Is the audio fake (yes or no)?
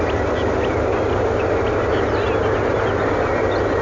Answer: no